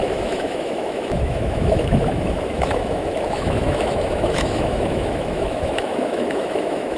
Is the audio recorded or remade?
remade